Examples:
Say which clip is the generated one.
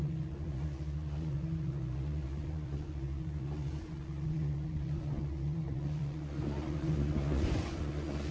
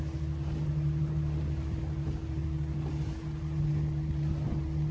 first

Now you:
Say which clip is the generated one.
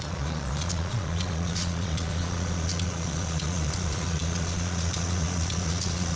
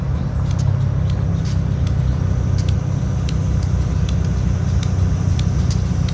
first